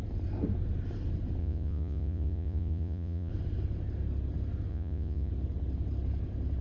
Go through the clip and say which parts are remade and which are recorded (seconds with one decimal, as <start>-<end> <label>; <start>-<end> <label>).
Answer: 0.0-1.4 recorded; 1.4-3.3 remade; 3.3-4.7 recorded; 4.7-5.3 remade; 5.3-6.6 recorded